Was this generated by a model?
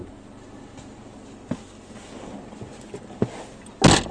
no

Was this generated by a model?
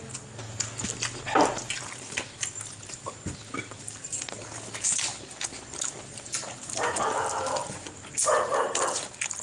no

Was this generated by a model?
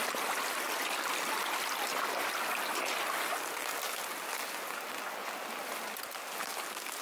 no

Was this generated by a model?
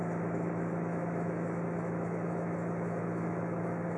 yes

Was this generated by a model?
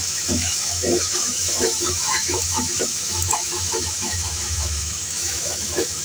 yes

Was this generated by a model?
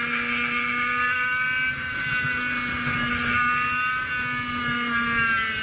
no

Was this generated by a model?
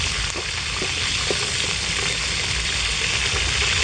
no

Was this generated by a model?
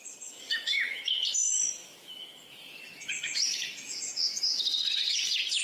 yes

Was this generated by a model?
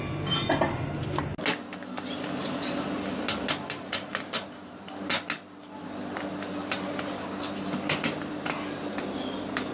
no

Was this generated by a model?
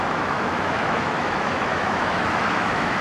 yes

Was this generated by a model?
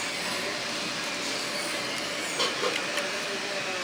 no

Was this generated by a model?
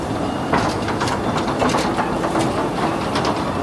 no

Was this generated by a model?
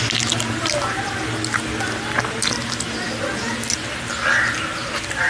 no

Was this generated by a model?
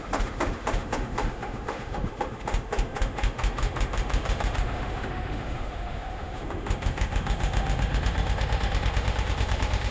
yes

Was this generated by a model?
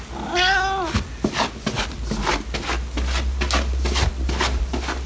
no